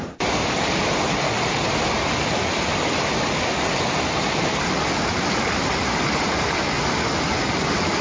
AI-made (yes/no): no